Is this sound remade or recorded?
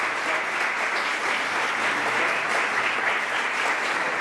recorded